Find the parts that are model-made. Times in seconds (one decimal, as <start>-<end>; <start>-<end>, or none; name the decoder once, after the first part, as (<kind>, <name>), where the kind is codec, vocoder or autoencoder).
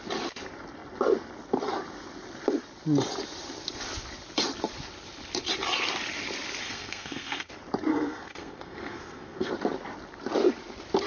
6.6-7.5 (codec, SNAC); 7.9-9.5